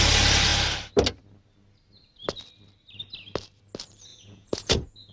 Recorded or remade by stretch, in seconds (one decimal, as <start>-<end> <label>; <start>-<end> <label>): 0.0-4.1 recorded; 4.1-5.1 remade